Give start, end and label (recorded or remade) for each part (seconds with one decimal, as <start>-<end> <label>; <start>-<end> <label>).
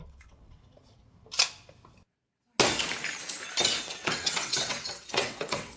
0.0-1.0 remade; 1.0-3.8 recorded; 3.8-5.8 remade